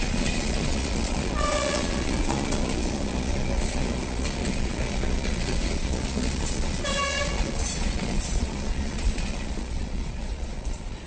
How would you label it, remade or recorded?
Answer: remade